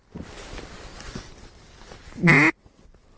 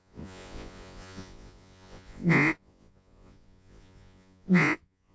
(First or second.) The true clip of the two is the first